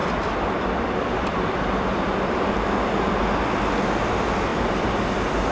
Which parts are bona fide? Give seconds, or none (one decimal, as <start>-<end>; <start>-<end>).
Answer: 2.9-4.5